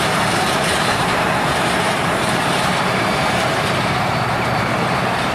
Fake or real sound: fake